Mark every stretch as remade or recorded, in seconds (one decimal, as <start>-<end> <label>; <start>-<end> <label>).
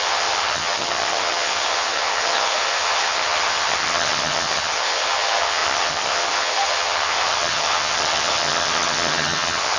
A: 0.0-9.8 remade